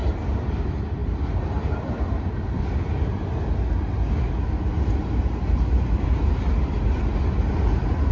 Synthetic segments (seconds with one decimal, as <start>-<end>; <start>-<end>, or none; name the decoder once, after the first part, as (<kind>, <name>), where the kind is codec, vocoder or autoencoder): none